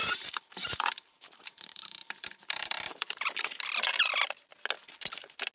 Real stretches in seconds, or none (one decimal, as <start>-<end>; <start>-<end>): 3.3-5.5